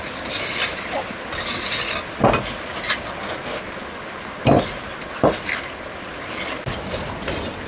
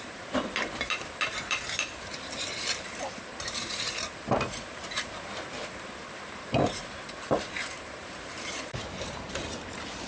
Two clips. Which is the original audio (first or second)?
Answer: first